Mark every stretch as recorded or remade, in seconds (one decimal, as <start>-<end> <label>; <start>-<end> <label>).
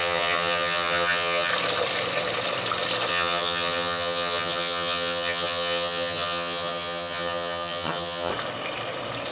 0.0-1.5 remade; 1.5-3.1 recorded; 3.1-8.3 remade; 8.3-9.3 recorded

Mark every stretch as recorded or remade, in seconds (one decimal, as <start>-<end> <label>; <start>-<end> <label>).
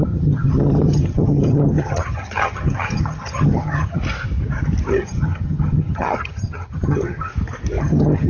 0.0-4.0 remade; 4.0-4.9 recorded; 4.9-7.3 remade; 7.3-7.8 recorded; 7.8-8.3 remade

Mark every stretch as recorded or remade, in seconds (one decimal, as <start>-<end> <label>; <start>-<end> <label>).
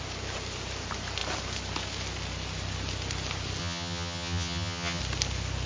0.0-3.6 recorded; 3.6-5.0 remade; 5.0-5.7 recorded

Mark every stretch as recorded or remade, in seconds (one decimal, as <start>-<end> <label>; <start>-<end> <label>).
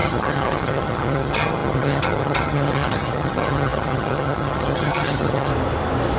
0.0-5.5 remade; 5.5-6.2 recorded